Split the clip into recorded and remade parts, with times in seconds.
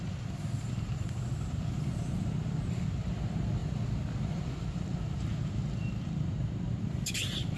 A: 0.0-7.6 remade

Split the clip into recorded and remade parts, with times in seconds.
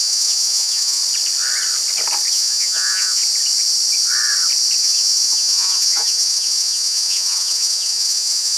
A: 0.0-1.0 remade; 1.0-2.3 recorded; 2.3-3.2 remade; 3.2-4.8 recorded; 4.8-8.6 remade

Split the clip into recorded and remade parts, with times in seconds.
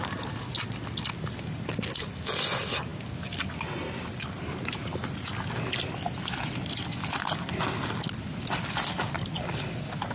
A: 0.0-10.1 recorded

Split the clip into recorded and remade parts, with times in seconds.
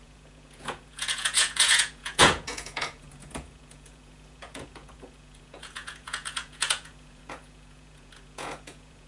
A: 0.0-9.1 remade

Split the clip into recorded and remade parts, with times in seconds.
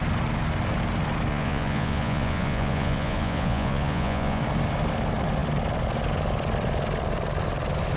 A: 0.0-1.3 recorded; 1.3-4.4 remade; 4.4-8.0 recorded